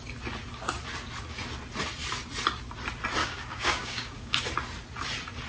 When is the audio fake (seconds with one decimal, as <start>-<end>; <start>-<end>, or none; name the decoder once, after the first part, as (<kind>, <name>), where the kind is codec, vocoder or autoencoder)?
3.2-4.4 (codec, DAC)